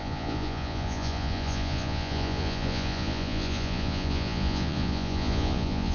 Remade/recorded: remade